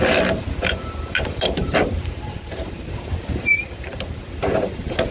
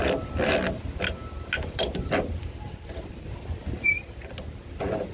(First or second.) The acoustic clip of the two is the second